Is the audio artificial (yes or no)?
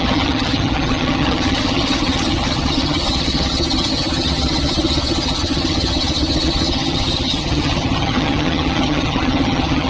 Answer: yes